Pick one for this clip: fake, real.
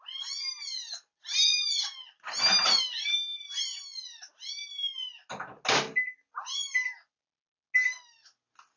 real